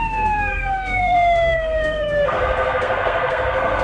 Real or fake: fake